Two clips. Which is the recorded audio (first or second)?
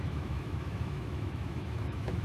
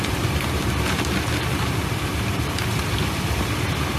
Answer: second